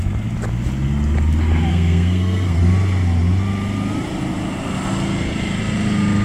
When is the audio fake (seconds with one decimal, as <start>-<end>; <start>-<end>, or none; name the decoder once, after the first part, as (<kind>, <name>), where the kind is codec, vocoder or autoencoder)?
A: 1.7-2.6 (codec, SNAC)